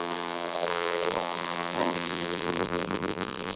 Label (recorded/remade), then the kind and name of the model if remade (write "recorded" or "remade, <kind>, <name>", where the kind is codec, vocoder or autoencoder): remade, vocoder, BigVGAN v2